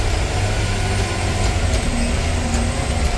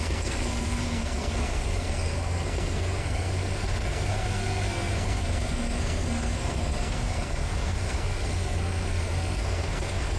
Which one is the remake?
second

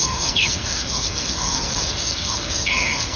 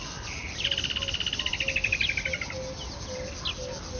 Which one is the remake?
first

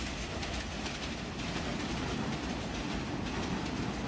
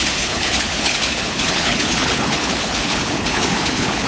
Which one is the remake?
second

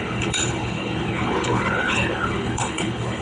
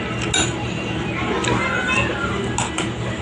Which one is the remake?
first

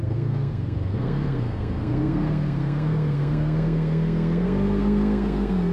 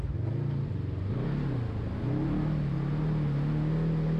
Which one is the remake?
first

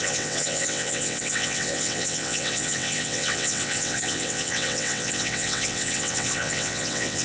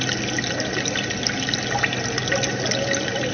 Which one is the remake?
first